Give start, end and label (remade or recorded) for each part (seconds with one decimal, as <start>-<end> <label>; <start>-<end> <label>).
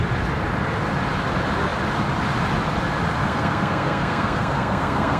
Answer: 0.0-3.2 recorded; 3.2-5.2 remade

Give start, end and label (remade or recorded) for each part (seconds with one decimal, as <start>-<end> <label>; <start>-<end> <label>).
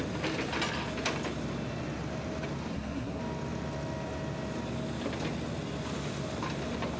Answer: 0.0-2.7 recorded; 2.7-3.2 remade; 3.2-7.0 recorded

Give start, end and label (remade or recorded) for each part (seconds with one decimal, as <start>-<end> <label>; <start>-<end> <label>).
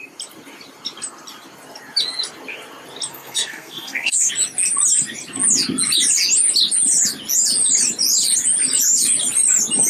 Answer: 0.0-3.1 recorded; 3.1-4.3 remade; 4.3-9.9 recorded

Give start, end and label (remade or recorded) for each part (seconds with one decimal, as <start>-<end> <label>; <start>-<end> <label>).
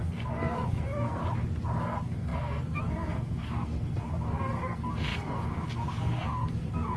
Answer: 0.0-1.2 remade; 1.2-1.8 recorded; 1.8-7.0 remade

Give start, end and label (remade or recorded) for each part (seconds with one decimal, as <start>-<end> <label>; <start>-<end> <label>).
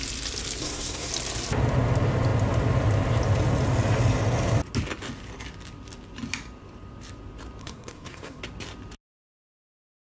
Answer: 0.0-0.6 recorded; 0.6-1.1 remade; 1.1-7.6 recorded; 7.6-8.4 remade; 8.4-10.0 recorded